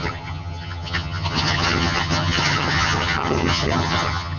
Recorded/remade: remade